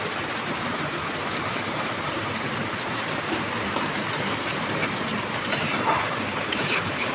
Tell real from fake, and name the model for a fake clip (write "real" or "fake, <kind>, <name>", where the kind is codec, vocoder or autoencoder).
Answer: fake, vocoder, BigVGAN v2